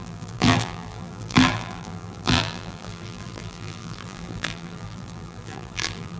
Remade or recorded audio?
remade